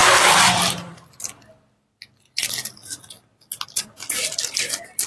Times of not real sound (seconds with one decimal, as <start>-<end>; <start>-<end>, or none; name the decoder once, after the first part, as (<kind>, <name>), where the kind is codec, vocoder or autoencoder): 0.0-0.9 (vocoder, BigVGAN v2)